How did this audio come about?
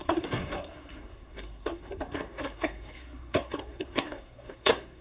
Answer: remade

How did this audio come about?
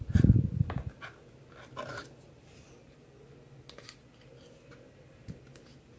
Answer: recorded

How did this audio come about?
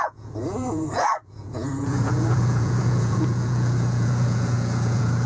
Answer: remade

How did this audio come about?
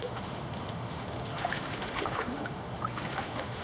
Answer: remade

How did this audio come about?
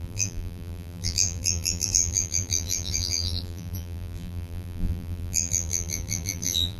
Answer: remade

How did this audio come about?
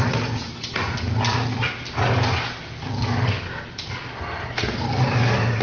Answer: recorded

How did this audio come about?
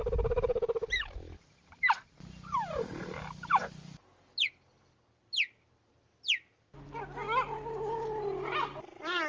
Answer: recorded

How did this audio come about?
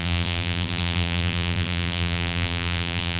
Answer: remade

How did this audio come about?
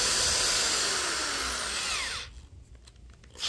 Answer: recorded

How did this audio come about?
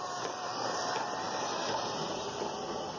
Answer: recorded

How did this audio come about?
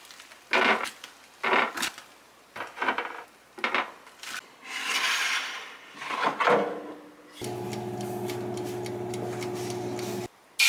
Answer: recorded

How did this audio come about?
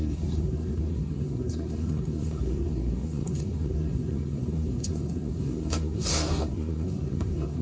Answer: remade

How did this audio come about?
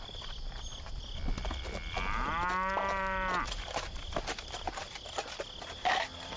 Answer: recorded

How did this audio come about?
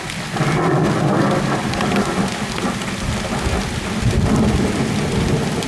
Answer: recorded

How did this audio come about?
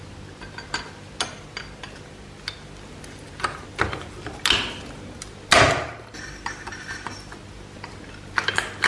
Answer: recorded